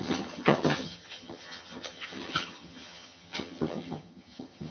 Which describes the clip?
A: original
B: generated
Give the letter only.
B